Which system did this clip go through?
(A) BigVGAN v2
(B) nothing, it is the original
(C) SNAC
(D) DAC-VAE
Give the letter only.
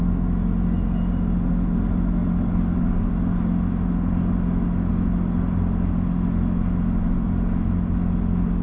B